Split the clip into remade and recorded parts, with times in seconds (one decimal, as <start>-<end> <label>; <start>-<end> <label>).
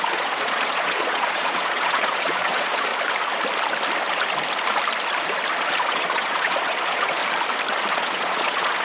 0.0-2.9 remade; 2.9-5.7 recorded; 5.7-7.2 remade; 7.2-7.9 recorded; 7.9-8.8 remade